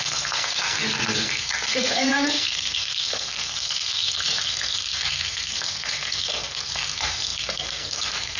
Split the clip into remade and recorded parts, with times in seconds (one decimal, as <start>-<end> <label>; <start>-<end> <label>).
0.0-8.4 remade